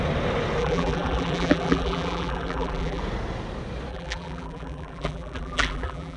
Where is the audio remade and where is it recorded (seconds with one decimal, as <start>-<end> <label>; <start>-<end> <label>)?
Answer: 0.0-0.6 recorded; 0.6-3.0 remade; 3.0-3.9 recorded; 3.9-6.2 remade